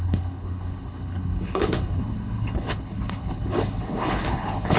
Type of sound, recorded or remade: remade